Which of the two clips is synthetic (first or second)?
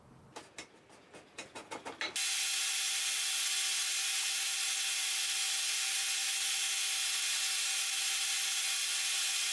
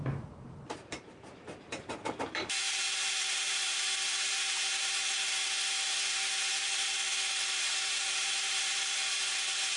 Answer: second